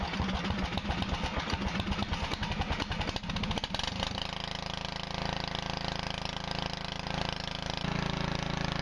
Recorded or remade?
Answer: recorded